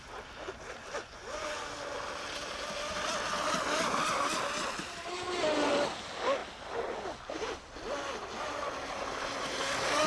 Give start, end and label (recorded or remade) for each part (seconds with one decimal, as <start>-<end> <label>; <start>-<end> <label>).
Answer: 0.0-1.0 recorded; 1.0-1.6 remade; 1.6-10.1 recorded